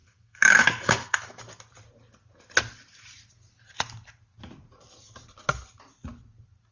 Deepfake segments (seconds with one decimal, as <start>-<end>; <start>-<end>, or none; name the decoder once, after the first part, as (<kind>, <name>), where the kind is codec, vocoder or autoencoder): 0.0-1.4 (autoencoder, DAC-VAE)